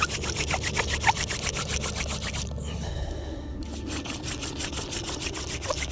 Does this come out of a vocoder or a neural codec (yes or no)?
no